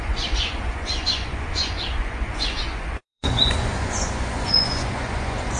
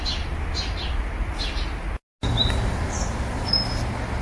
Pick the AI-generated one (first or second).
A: first